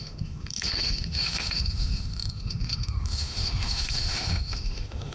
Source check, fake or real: fake